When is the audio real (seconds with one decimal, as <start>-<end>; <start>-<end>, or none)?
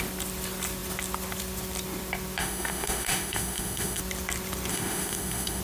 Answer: 0.0-2.4; 4.0-4.7